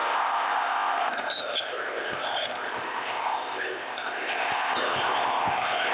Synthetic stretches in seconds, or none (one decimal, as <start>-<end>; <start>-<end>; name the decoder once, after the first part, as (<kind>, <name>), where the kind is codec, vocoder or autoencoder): 0.0-5.9 (codec, ZipCodec)